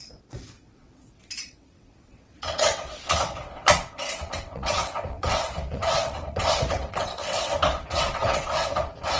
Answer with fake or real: fake